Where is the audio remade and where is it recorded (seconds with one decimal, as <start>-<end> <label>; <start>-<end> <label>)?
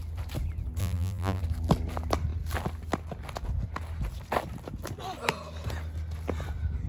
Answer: 0.0-0.8 recorded; 0.8-1.4 remade; 1.4-6.9 recorded